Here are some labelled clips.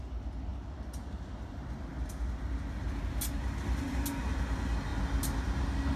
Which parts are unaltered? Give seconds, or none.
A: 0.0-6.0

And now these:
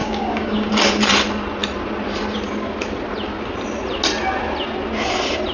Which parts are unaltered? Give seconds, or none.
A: 0.7-5.5

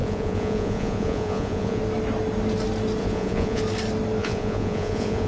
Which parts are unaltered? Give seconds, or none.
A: 1.8-3.0; 3.6-4.2

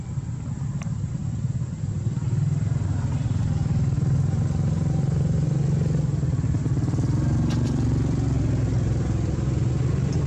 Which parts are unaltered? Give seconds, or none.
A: 0.0-1.2; 3.4-10.3